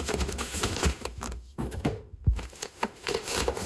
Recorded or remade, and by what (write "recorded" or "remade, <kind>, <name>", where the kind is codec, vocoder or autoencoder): remade, autoencoder, DAC-VAE